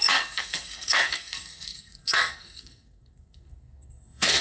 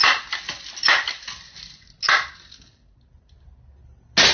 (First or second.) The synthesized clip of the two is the first